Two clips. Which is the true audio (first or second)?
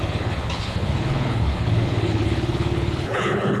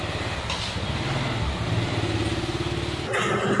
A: second